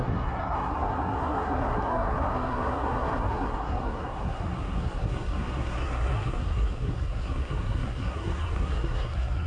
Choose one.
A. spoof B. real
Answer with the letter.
A